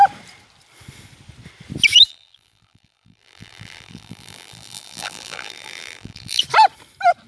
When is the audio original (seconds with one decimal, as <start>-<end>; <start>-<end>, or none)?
0.0-2.1; 6.4-7.3